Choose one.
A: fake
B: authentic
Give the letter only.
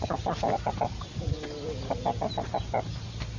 B